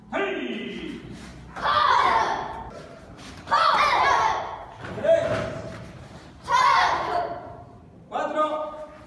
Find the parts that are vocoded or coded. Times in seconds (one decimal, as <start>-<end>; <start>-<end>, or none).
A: none